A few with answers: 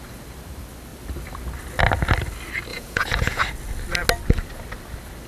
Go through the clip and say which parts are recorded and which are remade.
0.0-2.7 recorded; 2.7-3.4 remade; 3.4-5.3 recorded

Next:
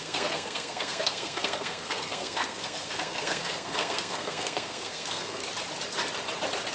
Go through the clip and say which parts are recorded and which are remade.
0.0-5.4 remade; 5.4-6.7 recorded

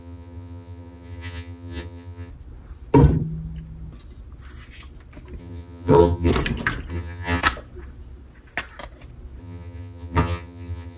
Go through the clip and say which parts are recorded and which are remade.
0.0-2.3 remade; 2.3-5.4 recorded; 5.4-6.3 remade; 6.3-6.9 recorded; 6.9-7.4 remade; 7.4-9.4 recorded; 9.4-11.0 remade

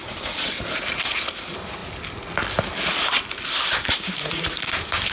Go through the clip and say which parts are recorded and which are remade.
0.0-1.8 remade; 1.8-3.9 recorded; 3.9-5.1 remade